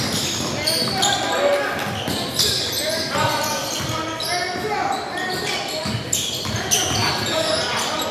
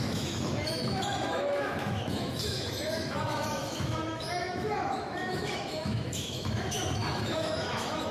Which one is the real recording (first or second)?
first